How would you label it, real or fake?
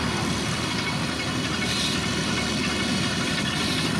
real